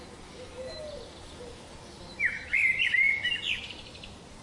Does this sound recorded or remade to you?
remade